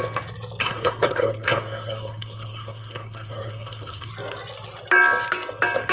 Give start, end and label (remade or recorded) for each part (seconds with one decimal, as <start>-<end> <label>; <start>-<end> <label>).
0.0-0.6 recorded; 0.6-4.1 remade; 4.1-5.9 recorded